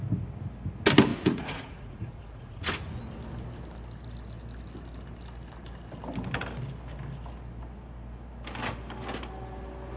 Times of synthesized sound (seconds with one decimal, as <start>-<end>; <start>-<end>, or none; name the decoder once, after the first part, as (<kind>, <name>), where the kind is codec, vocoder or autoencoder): 1.1-3.0 (vocoder, Vocos)